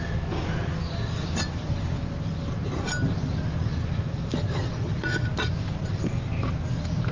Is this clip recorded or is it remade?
recorded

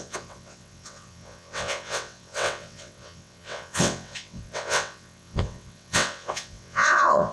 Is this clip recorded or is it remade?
remade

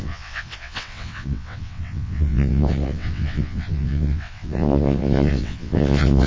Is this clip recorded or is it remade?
remade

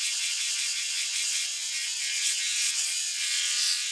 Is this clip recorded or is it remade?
remade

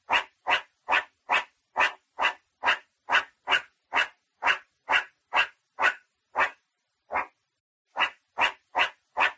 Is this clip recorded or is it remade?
recorded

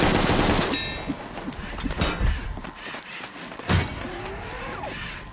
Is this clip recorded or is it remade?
recorded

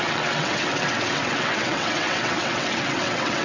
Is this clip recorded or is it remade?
remade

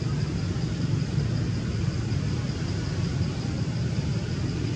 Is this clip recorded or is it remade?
recorded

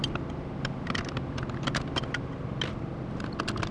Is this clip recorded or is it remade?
recorded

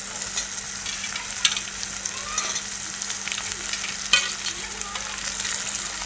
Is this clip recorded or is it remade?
recorded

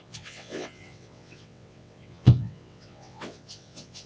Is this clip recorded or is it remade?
remade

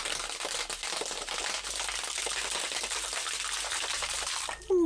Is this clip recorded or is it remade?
recorded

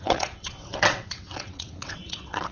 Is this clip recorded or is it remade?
remade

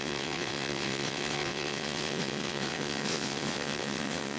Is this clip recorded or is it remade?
remade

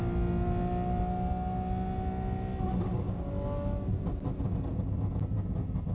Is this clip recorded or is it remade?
recorded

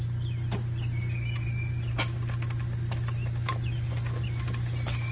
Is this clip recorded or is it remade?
recorded